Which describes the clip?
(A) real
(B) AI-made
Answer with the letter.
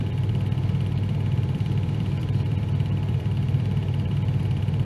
B